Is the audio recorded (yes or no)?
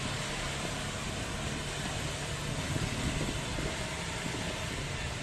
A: yes